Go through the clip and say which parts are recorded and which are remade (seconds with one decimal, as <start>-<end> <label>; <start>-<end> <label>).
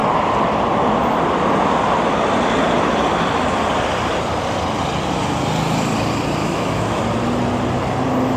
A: 0.0-6.4 recorded; 6.4-7.0 remade; 7.0-8.4 recorded